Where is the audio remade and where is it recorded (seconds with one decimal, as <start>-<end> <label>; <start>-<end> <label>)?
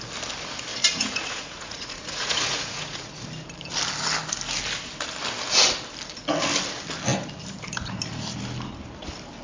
0.0-0.7 recorded; 0.7-3.1 remade; 3.1-9.4 recorded